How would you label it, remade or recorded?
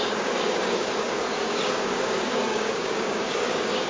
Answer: remade